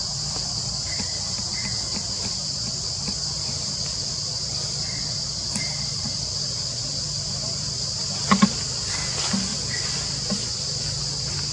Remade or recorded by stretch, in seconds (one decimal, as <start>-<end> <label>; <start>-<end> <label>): 0.0-11.5 recorded